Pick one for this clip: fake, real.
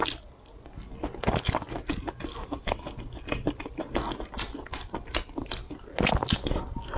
real